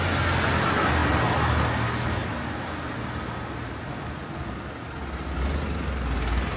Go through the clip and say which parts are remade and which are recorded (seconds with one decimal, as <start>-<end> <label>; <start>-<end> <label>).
0.0-6.6 recorded

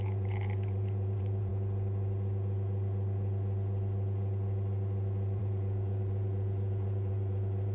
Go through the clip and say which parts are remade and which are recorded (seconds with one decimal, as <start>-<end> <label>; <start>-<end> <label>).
0.0-1.5 remade; 1.5-5.4 recorded; 5.4-7.7 remade

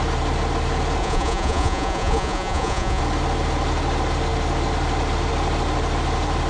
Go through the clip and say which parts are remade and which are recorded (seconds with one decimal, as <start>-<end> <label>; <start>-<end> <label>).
0.0-1.0 recorded; 1.0-3.0 remade; 3.0-6.5 recorded

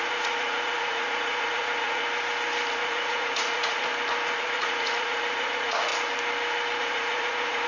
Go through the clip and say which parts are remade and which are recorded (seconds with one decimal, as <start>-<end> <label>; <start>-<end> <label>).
0.0-2.0 remade; 2.0-2.7 recorded; 2.7-3.9 remade; 3.9-4.4 recorded; 4.4-5.9 remade; 5.9-6.8 recorded; 6.8-7.7 remade

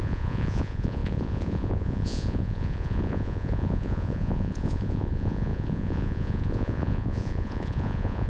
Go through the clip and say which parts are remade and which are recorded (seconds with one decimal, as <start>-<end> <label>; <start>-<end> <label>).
0.0-8.3 remade

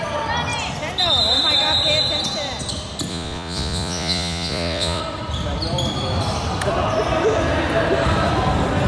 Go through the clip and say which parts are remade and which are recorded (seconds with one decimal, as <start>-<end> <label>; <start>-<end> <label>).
0.0-3.1 recorded; 3.1-5.0 remade; 5.0-8.9 recorded

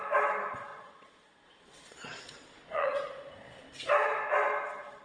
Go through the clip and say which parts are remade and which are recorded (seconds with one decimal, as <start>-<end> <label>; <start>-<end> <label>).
0.0-0.7 recorded; 0.7-3.7 remade; 3.7-5.0 recorded